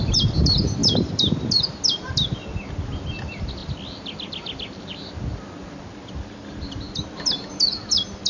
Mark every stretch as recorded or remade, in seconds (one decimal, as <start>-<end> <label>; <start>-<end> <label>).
0.0-8.3 recorded